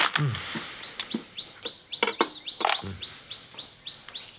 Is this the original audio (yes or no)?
yes